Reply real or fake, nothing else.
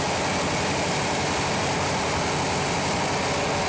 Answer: real